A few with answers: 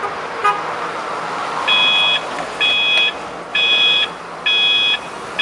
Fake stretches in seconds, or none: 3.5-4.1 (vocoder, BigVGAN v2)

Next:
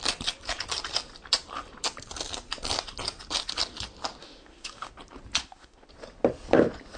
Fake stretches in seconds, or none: 4.2-4.9 (autoencoder, DAC-VAE); 5.4-5.9

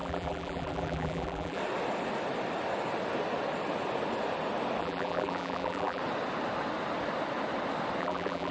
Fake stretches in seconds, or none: 0.0-1.6 (vocoder, BigVGAN v2); 4.8-6.0; 8.0-8.5

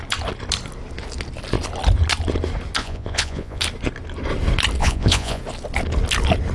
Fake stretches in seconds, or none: 2.8-3.6 (vocoder, Vocos); 4.8-5.4

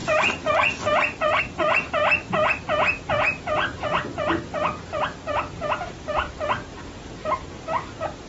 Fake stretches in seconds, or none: 5.3-6.3 (vocoder, BigVGAN v2)